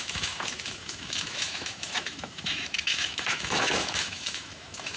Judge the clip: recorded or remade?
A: remade